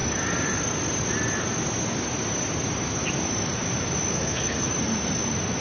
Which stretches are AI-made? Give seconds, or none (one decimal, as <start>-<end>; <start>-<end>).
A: 4.1-4.7